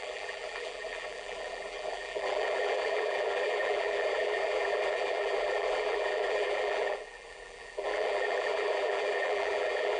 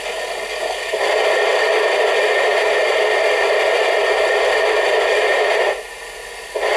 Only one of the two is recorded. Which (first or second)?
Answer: second